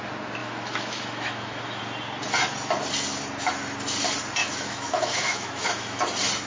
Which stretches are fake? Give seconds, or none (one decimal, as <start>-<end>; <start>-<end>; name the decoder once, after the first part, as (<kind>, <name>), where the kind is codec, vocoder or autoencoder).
0.4-1.8 (autoencoder, DAC-VAE); 4.4-6.0